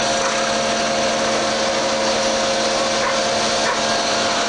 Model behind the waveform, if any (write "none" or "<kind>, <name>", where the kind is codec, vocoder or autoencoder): none